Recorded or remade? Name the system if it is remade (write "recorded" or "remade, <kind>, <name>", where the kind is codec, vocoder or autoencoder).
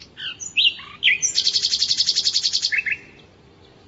recorded